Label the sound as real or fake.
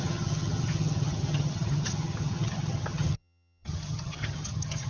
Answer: fake